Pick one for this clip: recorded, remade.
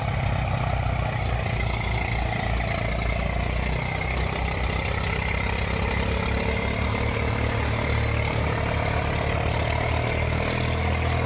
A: recorded